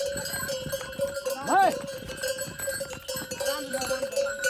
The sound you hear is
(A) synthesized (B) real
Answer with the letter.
B